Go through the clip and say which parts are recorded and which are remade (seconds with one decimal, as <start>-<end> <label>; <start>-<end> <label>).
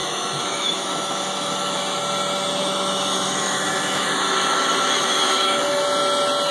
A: 0.0-2.0 remade; 2.0-2.6 recorded; 2.6-5.8 remade; 5.8-6.5 recorded